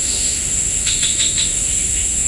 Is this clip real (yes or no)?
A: no